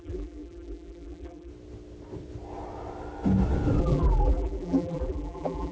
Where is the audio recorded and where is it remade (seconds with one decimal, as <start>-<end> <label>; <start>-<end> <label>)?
0.0-1.5 remade; 1.5-3.8 recorded; 3.8-5.7 remade